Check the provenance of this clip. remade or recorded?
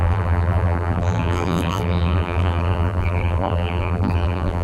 remade